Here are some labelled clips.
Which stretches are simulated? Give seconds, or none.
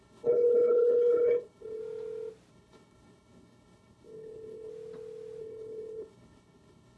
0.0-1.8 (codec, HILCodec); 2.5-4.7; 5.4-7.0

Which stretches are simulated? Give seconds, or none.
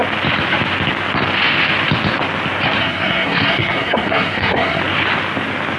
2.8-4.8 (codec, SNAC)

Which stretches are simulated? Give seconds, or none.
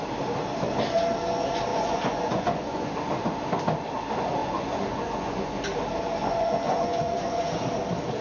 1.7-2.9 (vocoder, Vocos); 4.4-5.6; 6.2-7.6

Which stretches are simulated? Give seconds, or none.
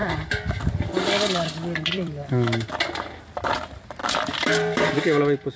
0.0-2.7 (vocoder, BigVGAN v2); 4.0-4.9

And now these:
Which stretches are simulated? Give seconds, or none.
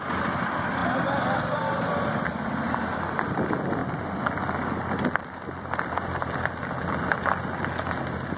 0.8-1.8 (vocoder, BigVGAN v2)